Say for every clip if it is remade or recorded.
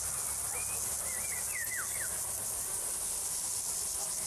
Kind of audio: recorded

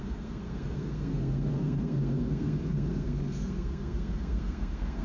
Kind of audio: remade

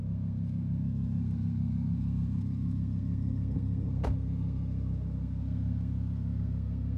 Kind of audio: remade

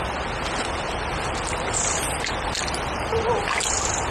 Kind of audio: recorded